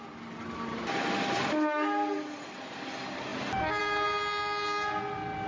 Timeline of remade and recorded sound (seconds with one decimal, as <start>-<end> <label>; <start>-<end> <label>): 0.0-5.5 recorded